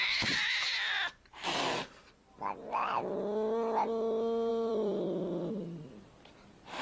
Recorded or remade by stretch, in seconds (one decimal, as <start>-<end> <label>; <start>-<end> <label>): 0.0-0.4 remade; 0.4-4.5 recorded; 4.5-6.8 remade

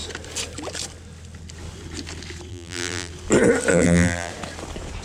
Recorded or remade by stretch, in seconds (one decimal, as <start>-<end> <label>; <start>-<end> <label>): 0.0-2.5 recorded; 2.5-3.1 remade; 3.1-3.7 recorded; 3.7-4.3 remade; 4.3-5.0 recorded

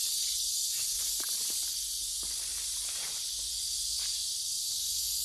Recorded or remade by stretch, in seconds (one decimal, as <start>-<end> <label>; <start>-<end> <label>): 0.0-2.5 recorded; 2.5-3.3 remade; 3.3-4.1 recorded; 4.1-4.7 remade; 4.7-5.2 recorded

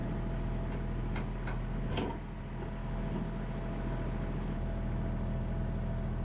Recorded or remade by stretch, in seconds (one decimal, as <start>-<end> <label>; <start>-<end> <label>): 0.0-6.2 recorded

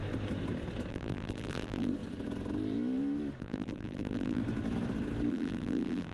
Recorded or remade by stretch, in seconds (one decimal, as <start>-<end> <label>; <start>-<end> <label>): 0.0-0.9 recorded; 0.9-1.9 remade; 1.9-3.4 recorded; 3.4-4.4 remade; 4.4-5.3 recorded; 5.3-6.1 remade